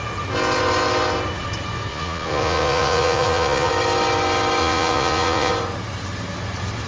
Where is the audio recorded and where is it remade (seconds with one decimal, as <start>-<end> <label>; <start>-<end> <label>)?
0.0-1.9 recorded; 1.9-3.7 remade; 3.7-4.6 recorded; 4.6-5.5 remade; 5.5-6.9 recorded